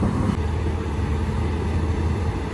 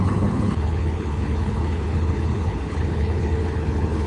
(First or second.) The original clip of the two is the first